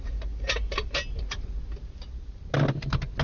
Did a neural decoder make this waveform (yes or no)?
no